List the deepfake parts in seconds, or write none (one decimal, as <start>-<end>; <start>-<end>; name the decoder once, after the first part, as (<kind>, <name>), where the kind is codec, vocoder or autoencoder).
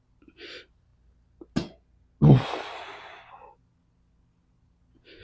none